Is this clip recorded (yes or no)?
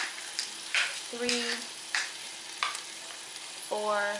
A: yes